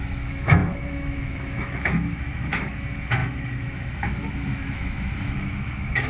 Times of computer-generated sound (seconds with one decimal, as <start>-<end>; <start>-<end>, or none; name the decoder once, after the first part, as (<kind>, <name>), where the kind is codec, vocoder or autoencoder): 0.0-6.1 (autoencoder, DAC-VAE)